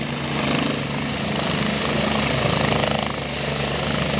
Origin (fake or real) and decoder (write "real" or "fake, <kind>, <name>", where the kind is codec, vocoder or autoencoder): real